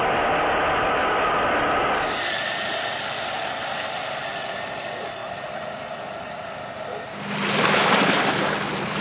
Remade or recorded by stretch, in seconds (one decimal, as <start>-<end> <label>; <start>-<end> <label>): 0.0-9.0 recorded